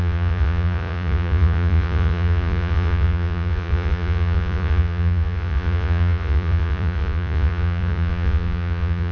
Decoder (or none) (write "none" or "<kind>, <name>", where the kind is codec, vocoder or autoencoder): vocoder, Vocos